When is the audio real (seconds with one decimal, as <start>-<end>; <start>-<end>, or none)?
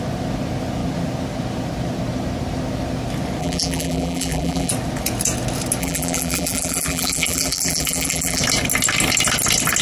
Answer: 0.0-3.4; 4.7-5.8; 8.4-9.8